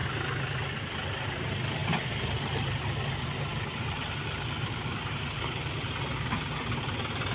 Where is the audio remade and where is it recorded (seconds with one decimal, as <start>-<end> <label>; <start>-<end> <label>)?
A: 0.0-7.3 recorded